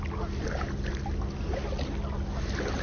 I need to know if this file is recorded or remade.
recorded